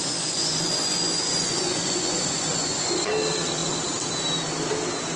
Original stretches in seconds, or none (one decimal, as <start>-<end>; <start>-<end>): 3.1-5.2